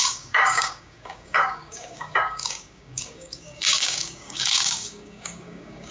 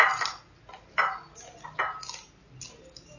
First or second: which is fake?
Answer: first